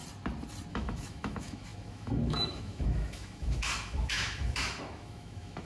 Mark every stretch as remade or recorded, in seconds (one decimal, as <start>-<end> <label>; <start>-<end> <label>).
0.0-0.7 recorded; 0.7-5.7 remade